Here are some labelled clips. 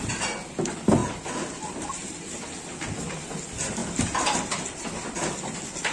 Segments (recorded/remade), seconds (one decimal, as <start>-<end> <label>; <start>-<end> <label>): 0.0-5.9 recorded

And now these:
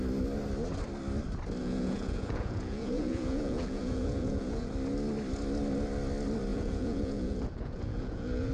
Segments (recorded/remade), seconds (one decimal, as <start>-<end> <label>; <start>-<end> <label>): 0.0-1.6 recorded; 1.6-4.7 remade; 4.7-6.5 recorded; 6.5-8.5 remade

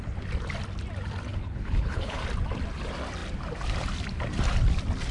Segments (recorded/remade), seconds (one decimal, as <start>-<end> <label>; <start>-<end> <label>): 0.0-1.3 recorded; 1.3-2.2 remade; 2.2-5.1 recorded

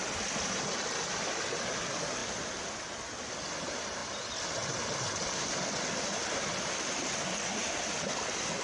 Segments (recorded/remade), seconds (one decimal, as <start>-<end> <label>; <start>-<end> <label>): 0.0-8.6 recorded

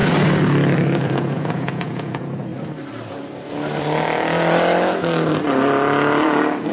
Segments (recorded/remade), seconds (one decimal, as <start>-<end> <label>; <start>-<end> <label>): 0.0-1.0 recorded; 1.0-2.5 remade; 2.5-6.7 recorded

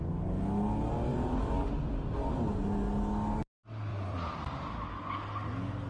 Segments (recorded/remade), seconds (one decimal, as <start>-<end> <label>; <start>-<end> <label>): 0.0-1.1 recorded; 1.1-2.3 remade; 2.3-3.9 recorded; 3.9-4.7 remade; 4.7-5.9 recorded

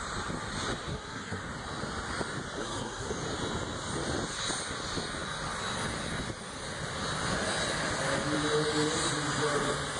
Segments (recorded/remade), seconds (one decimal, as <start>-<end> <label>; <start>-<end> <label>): 0.0-0.9 recorded; 0.9-1.4 remade; 1.4-2.6 recorded; 2.6-3.1 remade; 3.1-10.0 recorded

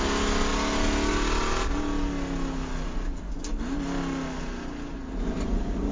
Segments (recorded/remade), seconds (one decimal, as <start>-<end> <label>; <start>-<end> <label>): 0.0-5.9 recorded